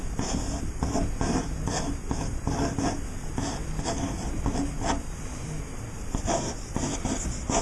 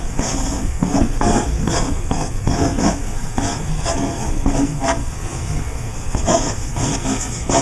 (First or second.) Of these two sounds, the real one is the first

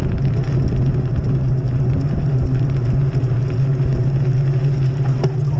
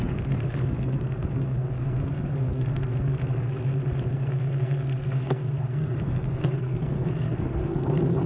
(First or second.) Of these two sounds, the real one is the first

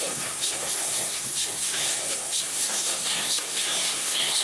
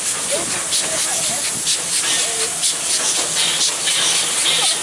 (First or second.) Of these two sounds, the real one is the second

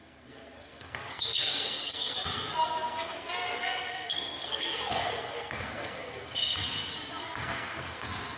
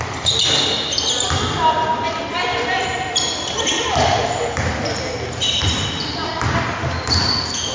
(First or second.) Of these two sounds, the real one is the second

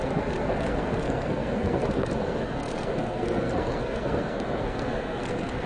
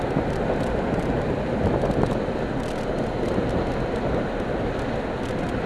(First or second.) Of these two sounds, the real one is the second